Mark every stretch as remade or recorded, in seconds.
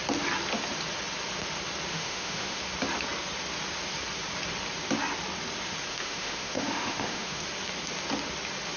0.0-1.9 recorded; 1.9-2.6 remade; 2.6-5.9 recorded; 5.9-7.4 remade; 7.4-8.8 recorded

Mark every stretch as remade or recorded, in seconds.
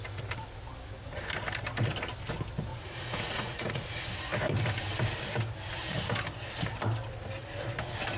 0.0-2.7 recorded; 2.7-4.1 remade; 4.1-8.2 recorded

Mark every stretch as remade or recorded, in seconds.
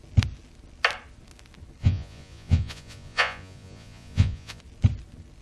0.0-1.8 recorded; 1.8-4.6 remade; 4.6-5.4 recorded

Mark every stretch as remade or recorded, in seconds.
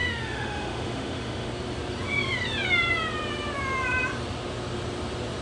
0.0-1.5 remade; 1.5-5.4 recorded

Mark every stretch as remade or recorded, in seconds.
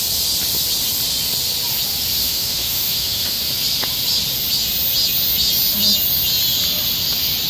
0.0-2.2 recorded; 2.2-3.4 remade; 3.4-7.5 recorded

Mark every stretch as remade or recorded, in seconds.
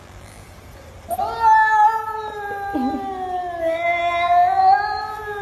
0.0-0.4 remade; 0.4-3.6 recorded; 3.6-5.4 remade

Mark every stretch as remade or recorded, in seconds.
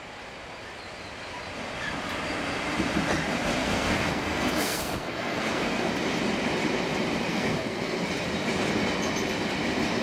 0.0-3.6 recorded; 3.6-5.9 remade; 5.9-7.3 recorded; 7.3-8.0 remade; 8.0-10.0 recorded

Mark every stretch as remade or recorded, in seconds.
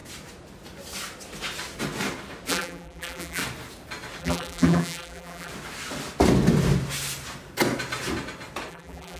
0.0-2.5 recorded; 2.5-3.4 remade; 3.4-4.2 recorded; 4.2-5.5 remade; 5.5-8.7 recorded; 8.7-9.2 remade